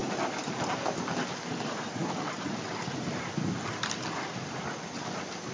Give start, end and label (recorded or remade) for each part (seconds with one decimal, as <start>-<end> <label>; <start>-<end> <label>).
0.0-5.5 recorded